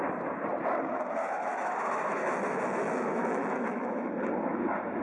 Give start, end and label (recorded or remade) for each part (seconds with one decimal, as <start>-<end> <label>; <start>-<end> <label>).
0.0-1.2 recorded; 1.2-4.1 remade; 4.1-5.0 recorded